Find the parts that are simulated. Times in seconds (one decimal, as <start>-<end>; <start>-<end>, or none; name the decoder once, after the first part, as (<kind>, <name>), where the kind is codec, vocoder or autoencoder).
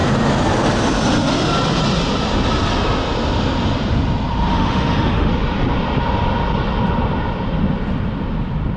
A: 4.5-5.3 (autoencoder, DAC-VAE)